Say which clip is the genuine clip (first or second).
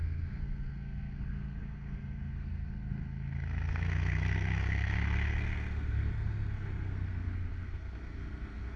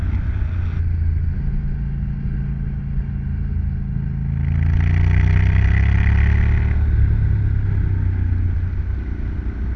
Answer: second